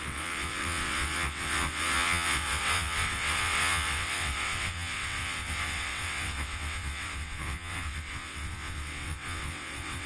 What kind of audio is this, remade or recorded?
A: remade